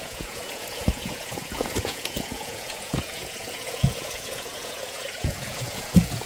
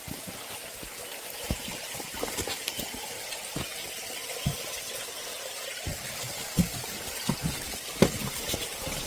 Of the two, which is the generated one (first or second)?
first